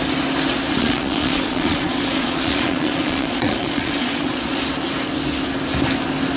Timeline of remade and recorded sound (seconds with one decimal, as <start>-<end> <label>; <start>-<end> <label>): 0.0-0.8 recorded; 0.8-4.6 remade; 4.6-6.4 recorded